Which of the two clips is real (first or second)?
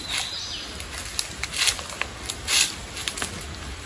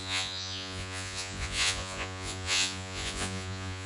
first